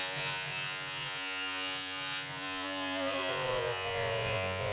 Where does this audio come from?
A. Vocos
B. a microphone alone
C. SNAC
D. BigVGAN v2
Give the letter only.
A